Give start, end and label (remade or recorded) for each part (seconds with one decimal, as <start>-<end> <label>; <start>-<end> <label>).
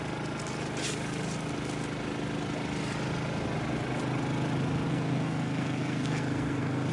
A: 0.0-4.9 recorded; 4.9-6.9 remade